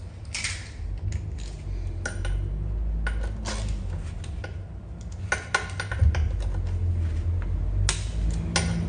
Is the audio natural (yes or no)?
yes